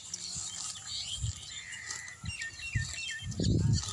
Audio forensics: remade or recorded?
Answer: recorded